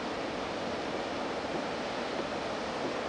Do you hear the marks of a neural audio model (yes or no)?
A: no